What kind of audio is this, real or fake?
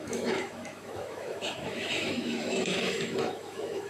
fake